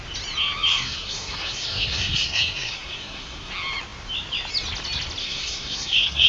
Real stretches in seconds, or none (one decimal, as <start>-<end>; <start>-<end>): 0.0-0.7; 3.5-5.2